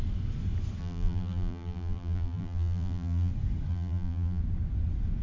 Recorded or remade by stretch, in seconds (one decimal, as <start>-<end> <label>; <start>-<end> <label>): 0.0-0.8 recorded; 0.8-3.3 remade; 3.3-3.7 recorded; 3.7-4.4 remade; 4.4-5.2 recorded